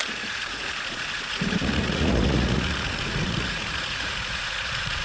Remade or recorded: remade